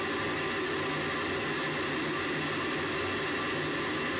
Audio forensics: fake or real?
real